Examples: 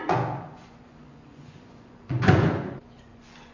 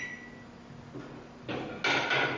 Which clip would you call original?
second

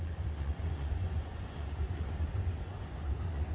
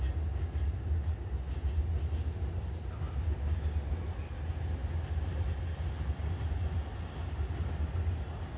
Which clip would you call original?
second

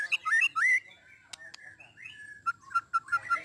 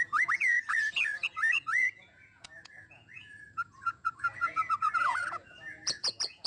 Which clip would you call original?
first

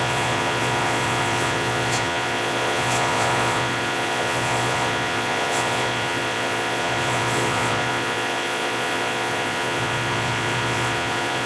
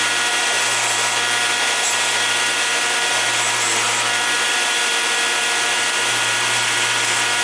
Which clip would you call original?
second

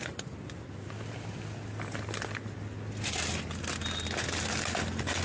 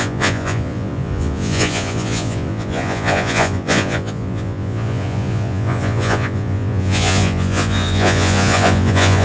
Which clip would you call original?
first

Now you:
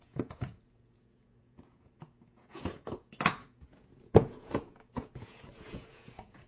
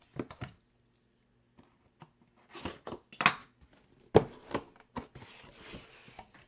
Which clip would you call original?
second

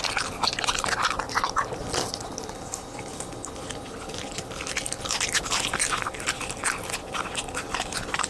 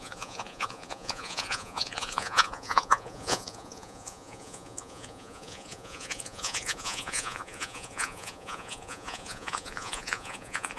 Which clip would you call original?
first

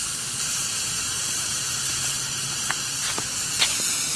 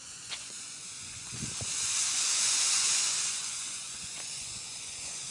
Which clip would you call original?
first